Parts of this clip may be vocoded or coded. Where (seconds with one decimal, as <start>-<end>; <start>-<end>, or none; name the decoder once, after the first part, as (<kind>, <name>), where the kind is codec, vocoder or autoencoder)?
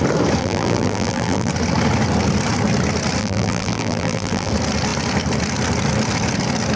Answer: 0.4-1.5 (vocoder, BigVGAN v2); 3.2-4.5